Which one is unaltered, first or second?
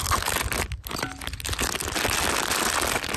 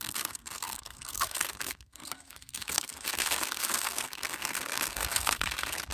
first